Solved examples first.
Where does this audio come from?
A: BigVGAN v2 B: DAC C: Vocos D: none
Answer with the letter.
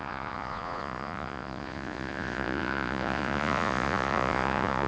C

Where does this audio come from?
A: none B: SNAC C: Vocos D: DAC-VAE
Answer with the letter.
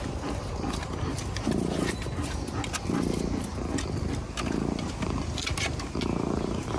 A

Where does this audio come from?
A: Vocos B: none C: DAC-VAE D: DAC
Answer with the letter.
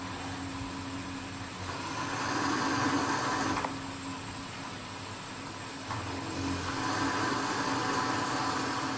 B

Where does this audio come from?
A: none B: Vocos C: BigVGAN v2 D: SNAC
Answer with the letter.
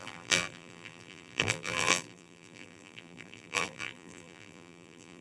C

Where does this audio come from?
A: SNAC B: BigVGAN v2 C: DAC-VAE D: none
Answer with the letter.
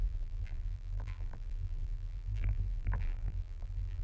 B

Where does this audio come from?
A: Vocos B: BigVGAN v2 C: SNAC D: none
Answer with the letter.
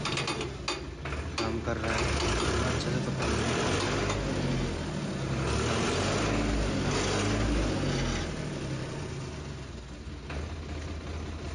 D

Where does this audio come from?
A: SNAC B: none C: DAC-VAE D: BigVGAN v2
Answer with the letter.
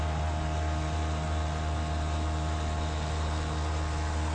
B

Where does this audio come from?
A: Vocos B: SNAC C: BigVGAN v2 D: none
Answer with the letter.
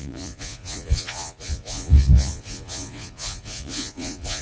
A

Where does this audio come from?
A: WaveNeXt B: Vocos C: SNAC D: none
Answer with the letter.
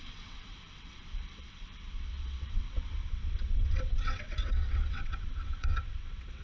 A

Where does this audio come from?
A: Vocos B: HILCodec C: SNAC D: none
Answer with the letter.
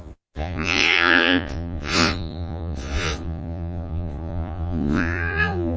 A